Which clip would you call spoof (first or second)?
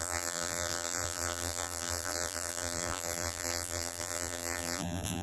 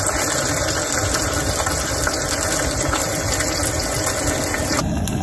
first